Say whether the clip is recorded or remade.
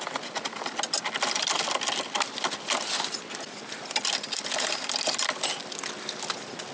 recorded